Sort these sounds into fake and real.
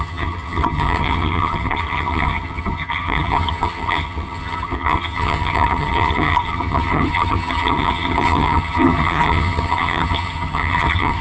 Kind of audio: fake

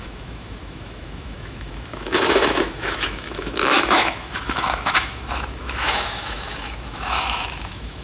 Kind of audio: fake